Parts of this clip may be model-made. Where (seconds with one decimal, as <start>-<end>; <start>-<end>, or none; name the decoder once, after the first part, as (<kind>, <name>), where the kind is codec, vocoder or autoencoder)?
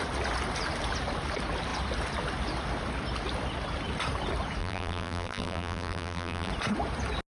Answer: 4.6-6.5 (vocoder, BigVGAN v2)